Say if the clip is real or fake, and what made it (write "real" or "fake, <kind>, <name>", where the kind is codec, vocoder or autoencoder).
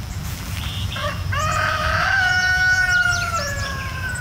fake, vocoder, BigVGAN v2